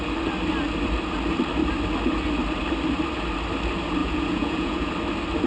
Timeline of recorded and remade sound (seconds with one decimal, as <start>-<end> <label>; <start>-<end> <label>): 0.0-4.0 recorded; 4.0-4.9 remade; 4.9-5.5 recorded